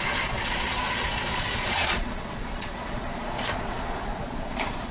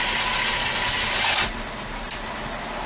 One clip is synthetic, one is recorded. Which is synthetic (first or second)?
first